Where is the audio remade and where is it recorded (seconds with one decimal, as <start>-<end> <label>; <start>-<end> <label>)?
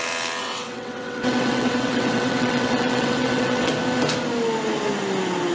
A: 0.0-0.4 recorded; 0.4-3.7 remade; 3.7-5.5 recorded